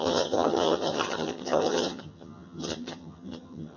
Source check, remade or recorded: remade